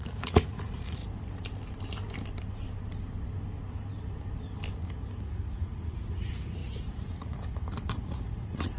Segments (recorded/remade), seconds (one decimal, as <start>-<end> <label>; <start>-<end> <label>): 0.0-1.0 remade; 1.0-5.2 recorded; 5.2-8.8 remade